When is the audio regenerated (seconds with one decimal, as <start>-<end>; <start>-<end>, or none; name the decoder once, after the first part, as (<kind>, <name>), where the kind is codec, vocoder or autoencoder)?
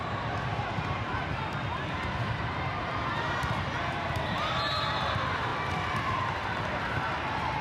0.0-1.1 (vocoder, BigVGAN v2); 3.8-5.5; 6.6-7.6